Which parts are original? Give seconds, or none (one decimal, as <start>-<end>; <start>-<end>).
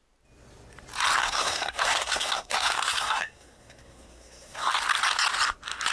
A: 0.0-1.2; 4.7-5.9